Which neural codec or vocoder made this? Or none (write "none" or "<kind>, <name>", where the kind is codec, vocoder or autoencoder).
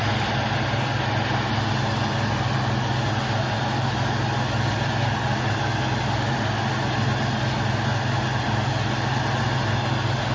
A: none